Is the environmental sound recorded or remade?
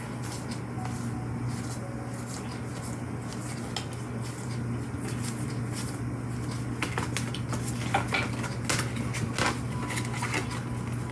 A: recorded